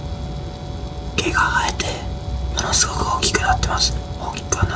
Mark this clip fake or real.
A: real